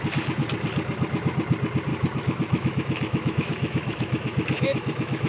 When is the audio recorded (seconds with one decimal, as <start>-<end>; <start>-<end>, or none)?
0.0-1.9